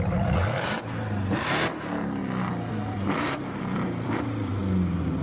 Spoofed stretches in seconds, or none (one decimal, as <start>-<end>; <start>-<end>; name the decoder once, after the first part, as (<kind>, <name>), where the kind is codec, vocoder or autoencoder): 0.0-2.2 (vocoder, BigVGAN v2); 2.7-4.6